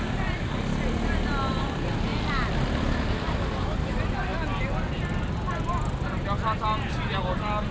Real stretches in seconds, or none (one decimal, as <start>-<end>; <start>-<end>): 0.0-2.1; 3.9-7.7